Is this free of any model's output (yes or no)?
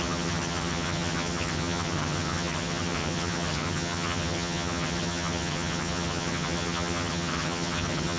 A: no